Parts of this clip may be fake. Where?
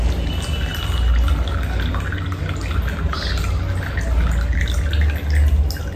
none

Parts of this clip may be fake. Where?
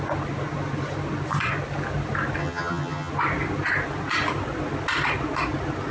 2.4-3.1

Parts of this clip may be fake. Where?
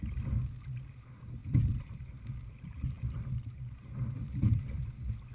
1.4-4.6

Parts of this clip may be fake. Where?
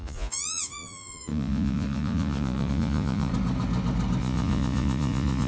0.0-3.3; 4.2-5.5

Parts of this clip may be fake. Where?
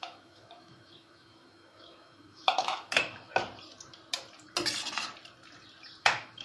0.0-3.3; 6.0-6.4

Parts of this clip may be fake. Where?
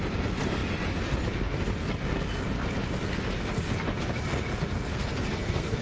4.9-5.8